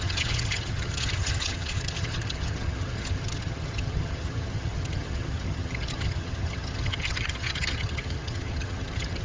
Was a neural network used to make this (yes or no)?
yes